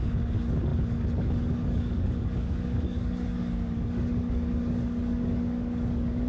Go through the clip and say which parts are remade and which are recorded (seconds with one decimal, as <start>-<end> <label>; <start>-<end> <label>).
0.0-6.3 remade